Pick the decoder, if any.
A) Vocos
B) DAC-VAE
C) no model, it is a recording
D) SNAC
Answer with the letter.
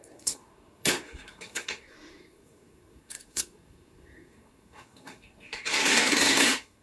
D